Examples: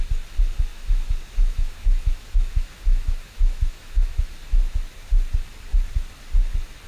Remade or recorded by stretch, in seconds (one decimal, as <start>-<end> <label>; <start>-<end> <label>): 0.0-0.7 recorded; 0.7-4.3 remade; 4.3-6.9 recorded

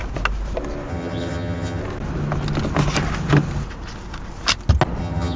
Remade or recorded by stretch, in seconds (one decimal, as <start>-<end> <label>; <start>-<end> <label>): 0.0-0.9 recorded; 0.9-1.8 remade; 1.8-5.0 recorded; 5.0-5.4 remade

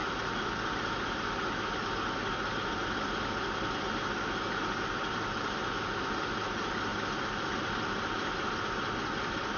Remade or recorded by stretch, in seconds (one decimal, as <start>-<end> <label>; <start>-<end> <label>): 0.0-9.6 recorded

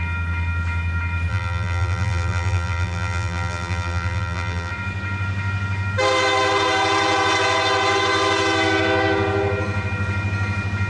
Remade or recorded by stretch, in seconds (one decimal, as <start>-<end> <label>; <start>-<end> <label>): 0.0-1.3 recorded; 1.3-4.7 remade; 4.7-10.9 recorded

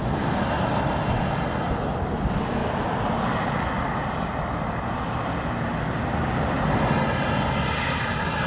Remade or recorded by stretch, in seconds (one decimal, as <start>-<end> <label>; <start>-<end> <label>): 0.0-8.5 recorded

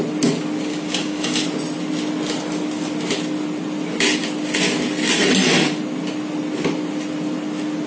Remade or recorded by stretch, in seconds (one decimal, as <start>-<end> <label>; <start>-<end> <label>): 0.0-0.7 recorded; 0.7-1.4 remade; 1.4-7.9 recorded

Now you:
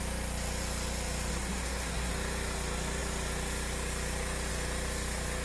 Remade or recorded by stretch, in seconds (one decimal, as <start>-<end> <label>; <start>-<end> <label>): 0.0-1.3 recorded; 1.3-2.1 remade; 2.1-5.4 recorded

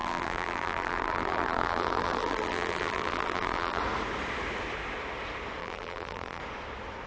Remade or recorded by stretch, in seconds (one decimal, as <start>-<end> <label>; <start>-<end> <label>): 0.0-3.8 remade; 3.8-5.6 recorded; 5.6-6.4 remade; 6.4-7.1 recorded